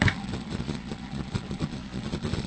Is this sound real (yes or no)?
no